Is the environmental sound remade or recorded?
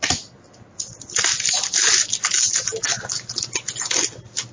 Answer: recorded